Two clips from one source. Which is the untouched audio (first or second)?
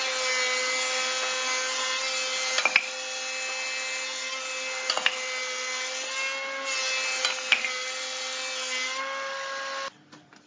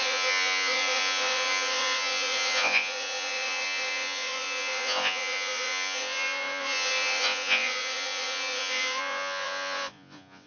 first